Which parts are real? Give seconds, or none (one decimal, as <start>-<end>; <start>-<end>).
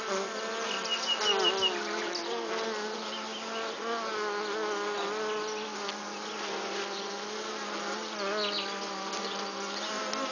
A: 0.0-10.3